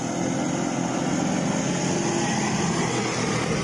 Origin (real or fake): real